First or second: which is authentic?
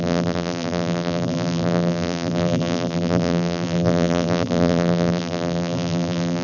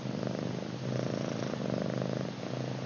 second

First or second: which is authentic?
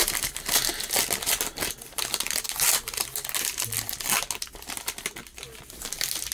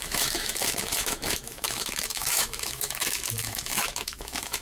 first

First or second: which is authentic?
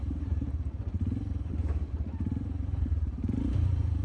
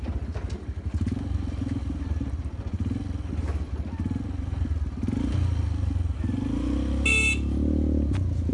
second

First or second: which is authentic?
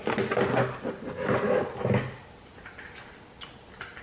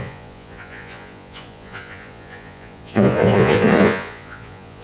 first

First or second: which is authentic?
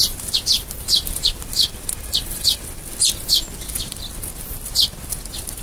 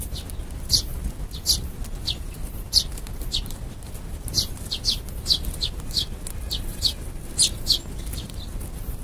second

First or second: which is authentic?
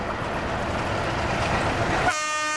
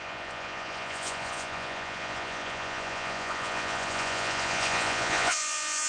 first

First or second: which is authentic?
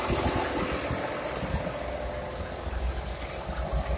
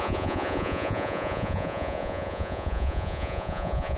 first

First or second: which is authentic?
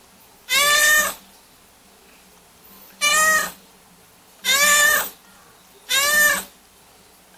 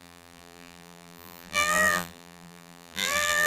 first